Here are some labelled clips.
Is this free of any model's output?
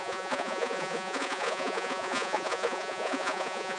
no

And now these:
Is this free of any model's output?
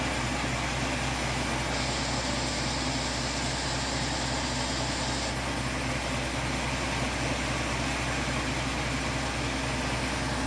yes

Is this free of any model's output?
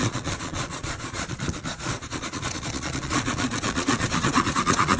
no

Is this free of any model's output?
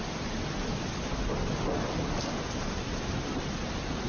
yes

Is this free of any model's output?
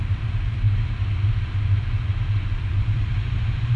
yes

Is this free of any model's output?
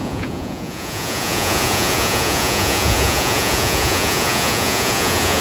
no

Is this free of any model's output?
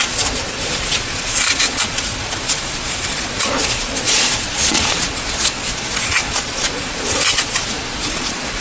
no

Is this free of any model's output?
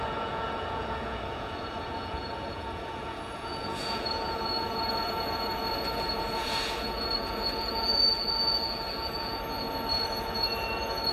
no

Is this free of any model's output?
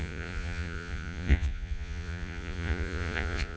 no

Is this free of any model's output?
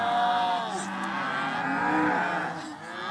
yes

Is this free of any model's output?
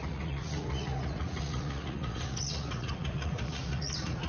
no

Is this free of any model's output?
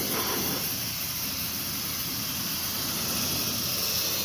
yes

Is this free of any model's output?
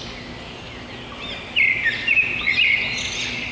yes